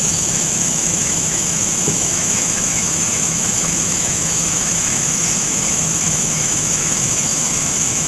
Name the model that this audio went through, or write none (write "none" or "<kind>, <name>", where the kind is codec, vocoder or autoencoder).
autoencoder, DAC-VAE